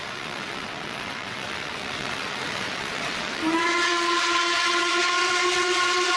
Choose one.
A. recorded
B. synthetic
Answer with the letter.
B